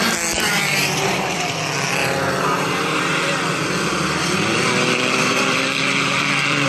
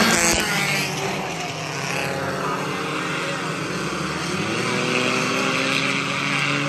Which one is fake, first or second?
first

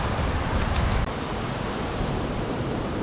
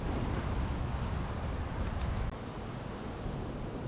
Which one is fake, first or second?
first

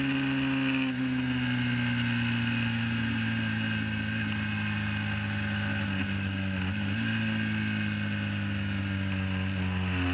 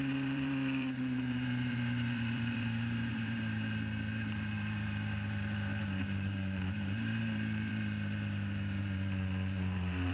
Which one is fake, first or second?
second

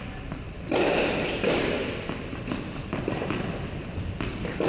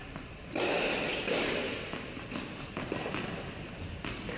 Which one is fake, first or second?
first